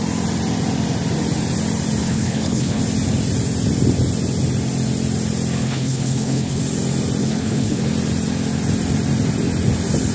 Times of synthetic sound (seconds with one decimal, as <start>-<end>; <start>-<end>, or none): 2.0-2.8; 5.6-6.6; 7.2-7.8